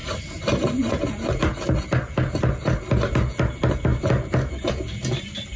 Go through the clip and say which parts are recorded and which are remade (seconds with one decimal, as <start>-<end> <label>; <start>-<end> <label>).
0.0-5.6 recorded